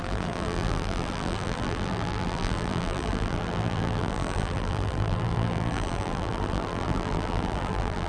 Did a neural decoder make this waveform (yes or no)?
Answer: yes